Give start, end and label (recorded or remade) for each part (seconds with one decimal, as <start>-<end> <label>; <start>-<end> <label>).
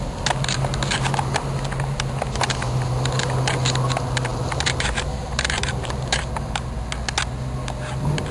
0.0-4.3 recorded; 4.3-6.3 remade; 6.3-8.3 recorded